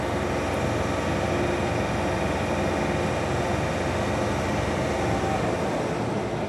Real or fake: real